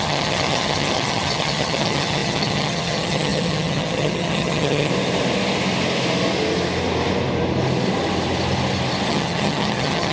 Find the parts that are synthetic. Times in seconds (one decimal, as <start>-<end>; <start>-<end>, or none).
0.0-4.9; 9.1-10.1